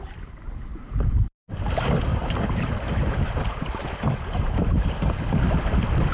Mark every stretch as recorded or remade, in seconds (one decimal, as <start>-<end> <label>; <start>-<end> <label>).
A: 0.0-2.1 recorded; 2.1-5.2 remade; 5.2-6.1 recorded